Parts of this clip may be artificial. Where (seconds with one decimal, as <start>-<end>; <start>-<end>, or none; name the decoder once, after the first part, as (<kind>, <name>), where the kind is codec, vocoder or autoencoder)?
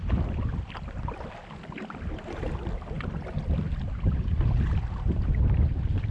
0.0-1.3 (vocoder, BigVGAN v2)